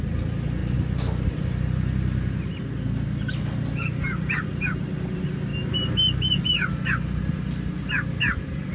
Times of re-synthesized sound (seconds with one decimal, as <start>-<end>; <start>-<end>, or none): 0.6-2.5